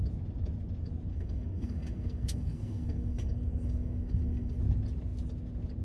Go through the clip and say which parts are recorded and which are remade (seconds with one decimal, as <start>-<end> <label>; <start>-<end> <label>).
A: 0.0-1.1 recorded; 1.1-4.6 remade; 4.6-5.8 recorded